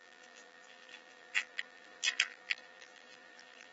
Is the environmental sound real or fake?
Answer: fake